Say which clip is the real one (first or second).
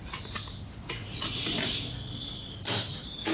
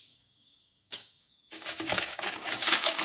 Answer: first